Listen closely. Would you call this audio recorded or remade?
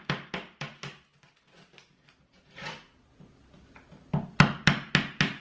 recorded